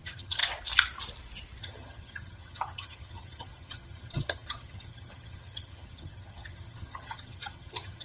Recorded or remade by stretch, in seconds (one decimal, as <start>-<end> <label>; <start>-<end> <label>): 0.0-0.4 remade; 0.4-1.6 recorded; 1.6-8.0 remade